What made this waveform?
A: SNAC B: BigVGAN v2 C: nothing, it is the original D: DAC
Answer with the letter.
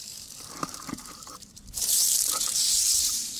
B